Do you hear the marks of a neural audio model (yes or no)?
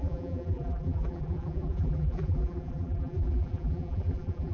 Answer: yes